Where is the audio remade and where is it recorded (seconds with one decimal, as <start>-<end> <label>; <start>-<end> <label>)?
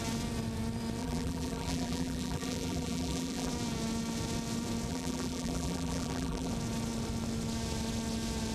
0.0-1.0 recorded; 1.0-3.5 remade; 3.5-4.9 recorded; 4.9-6.5 remade; 6.5-8.5 recorded